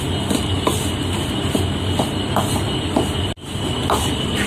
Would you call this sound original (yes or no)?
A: yes